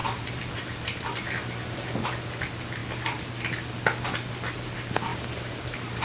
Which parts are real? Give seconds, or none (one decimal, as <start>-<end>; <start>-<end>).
0.0-5.1

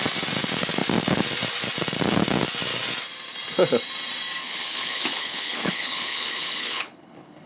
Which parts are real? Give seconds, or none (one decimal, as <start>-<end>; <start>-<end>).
0.0-4.4

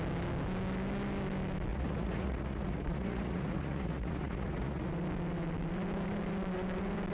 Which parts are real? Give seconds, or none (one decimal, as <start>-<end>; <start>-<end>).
0.0-1.7; 4.9-7.1

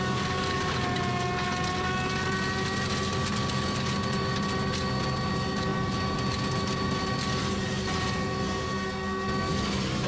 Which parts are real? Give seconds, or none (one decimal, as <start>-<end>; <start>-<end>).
0.0-10.1

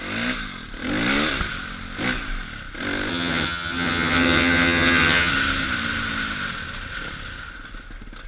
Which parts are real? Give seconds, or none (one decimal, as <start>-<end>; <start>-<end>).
0.0-3.1; 5.3-8.3